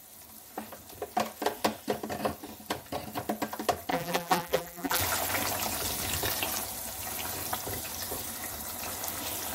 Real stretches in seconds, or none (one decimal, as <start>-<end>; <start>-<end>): 0.0-3.9; 5.0-9.5